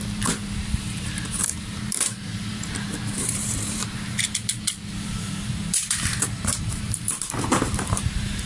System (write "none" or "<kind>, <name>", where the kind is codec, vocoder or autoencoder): vocoder, BigVGAN v2